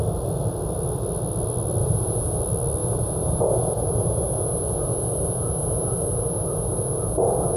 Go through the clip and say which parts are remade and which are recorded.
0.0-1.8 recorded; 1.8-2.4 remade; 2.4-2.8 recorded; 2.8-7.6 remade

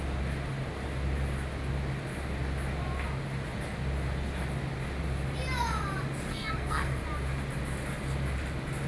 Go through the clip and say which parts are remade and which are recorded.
0.0-6.3 recorded; 6.3-7.0 remade; 7.0-8.9 recorded

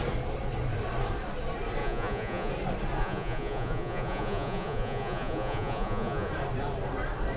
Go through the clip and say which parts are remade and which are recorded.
0.0-1.8 recorded; 1.8-2.5 remade; 2.5-3.0 recorded; 3.0-6.3 remade; 6.3-7.4 recorded

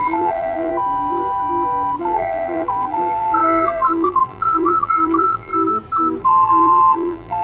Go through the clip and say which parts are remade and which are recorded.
0.0-0.7 remade; 0.7-2.0 recorded; 2.0-5.5 remade; 5.5-6.2 recorded; 6.2-7.4 remade

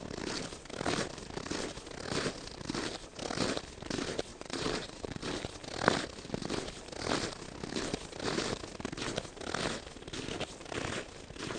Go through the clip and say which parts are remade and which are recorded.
0.0-4.3 recorded; 4.3-5.2 remade; 5.2-11.6 recorded